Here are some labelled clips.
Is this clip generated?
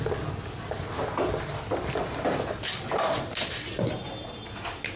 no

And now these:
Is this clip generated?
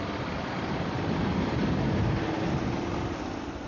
no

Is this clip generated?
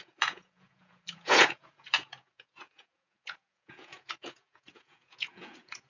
yes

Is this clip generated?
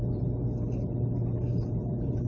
yes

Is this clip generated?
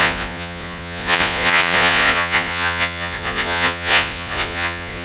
yes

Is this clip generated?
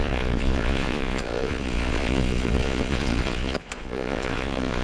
yes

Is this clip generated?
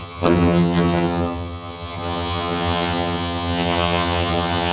yes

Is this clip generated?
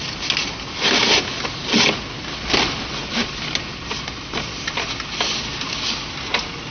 no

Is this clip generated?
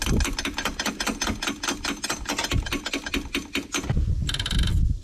no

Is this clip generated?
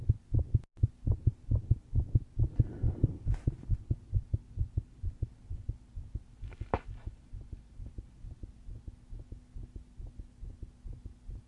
no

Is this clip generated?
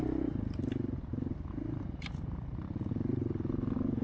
no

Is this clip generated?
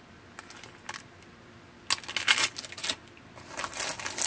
no